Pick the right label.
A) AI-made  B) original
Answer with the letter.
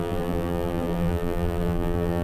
A